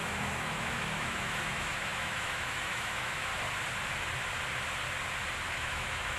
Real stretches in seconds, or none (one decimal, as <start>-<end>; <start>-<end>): 3.3-5.5

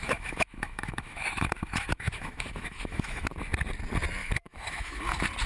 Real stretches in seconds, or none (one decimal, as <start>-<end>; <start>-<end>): 3.3-4.2; 5.0-5.5